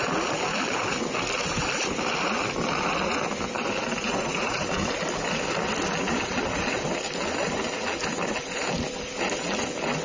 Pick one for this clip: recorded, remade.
recorded